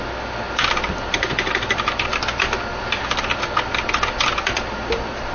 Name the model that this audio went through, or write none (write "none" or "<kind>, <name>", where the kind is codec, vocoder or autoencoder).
none